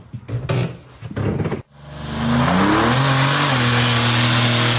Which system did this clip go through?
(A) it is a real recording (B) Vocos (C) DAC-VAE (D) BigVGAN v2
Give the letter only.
A